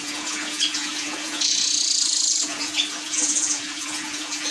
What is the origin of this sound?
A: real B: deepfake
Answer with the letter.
B